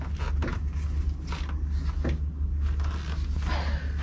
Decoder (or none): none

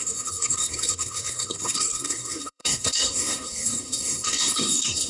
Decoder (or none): codec, SNAC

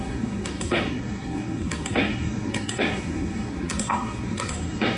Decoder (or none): codec, SNAC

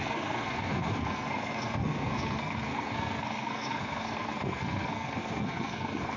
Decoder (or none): codec, SNAC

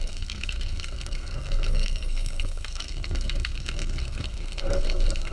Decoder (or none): codec, SNAC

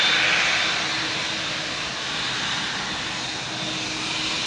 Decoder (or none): none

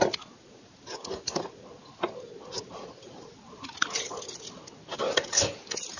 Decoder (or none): none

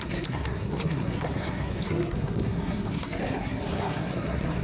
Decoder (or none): codec, SNAC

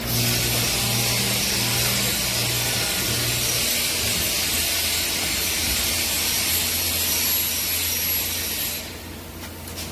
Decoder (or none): none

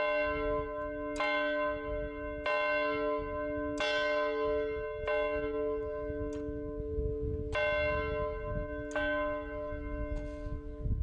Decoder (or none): none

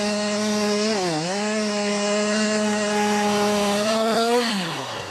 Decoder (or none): codec, SNAC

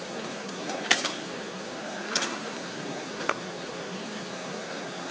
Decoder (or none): codec, SNAC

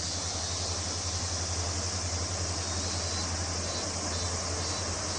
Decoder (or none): none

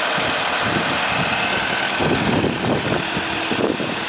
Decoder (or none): none